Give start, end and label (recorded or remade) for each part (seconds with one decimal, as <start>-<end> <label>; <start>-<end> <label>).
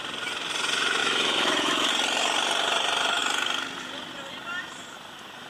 0.0-1.0 recorded; 1.0-1.9 remade; 1.9-5.5 recorded